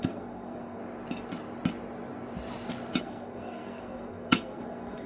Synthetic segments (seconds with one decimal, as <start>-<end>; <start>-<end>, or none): 0.0-0.8; 3.0-5.1